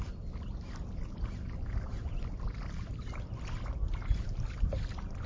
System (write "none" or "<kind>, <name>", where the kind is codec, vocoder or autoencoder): none